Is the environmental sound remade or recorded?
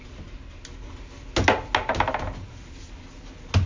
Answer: recorded